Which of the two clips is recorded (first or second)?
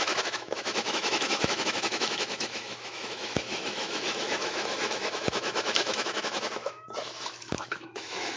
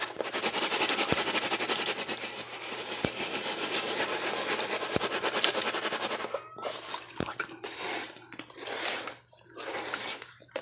second